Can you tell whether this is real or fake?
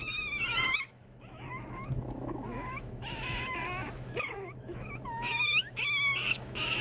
fake